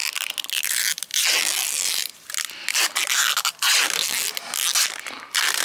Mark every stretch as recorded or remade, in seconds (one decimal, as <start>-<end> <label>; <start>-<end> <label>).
0.0-5.6 recorded